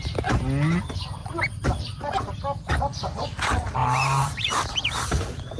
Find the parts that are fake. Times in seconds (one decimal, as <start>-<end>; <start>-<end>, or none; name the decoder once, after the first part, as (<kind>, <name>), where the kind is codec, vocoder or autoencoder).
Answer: 1.2-2.3 (vocoder, BigVGAN v2); 3.8-5.6